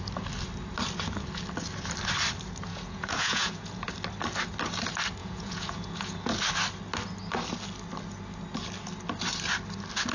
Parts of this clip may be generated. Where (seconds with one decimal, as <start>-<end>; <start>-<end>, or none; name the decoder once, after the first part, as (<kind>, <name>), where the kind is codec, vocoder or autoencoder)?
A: 2.7-3.9 (vocoder, Vocos); 5.2-6.3